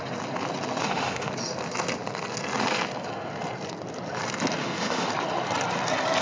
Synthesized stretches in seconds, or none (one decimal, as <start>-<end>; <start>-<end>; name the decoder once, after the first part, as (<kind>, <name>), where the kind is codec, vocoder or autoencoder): 0.8-1.3 (autoencoder, DAC-VAE); 4.6-5.1